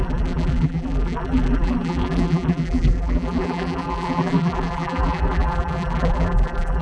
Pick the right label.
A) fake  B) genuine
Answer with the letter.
A